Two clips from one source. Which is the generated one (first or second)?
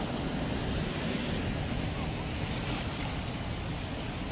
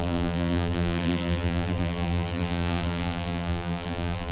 second